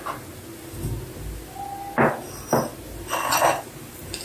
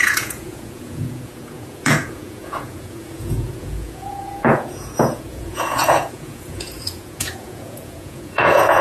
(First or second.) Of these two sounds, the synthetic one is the second